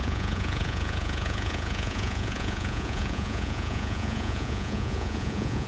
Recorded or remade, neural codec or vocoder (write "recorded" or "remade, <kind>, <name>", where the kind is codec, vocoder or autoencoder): remade, vocoder, Vocos